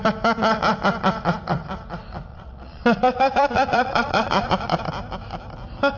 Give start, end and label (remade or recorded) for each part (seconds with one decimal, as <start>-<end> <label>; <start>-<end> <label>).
0.0-2.3 recorded; 2.3-4.8 remade; 4.8-6.0 recorded